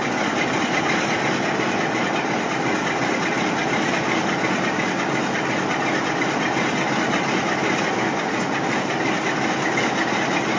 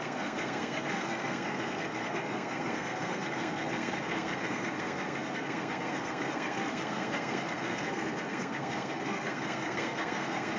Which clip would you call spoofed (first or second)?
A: second